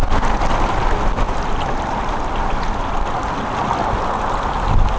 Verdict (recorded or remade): recorded